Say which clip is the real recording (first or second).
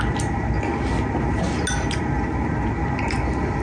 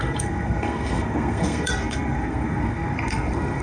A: first